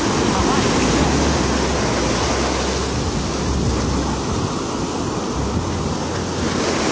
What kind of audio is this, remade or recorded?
recorded